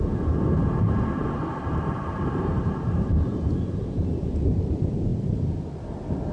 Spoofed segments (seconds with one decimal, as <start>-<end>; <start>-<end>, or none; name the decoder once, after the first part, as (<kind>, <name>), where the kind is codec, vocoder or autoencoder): 0.6-4.3 (vocoder, BigVGAN v2)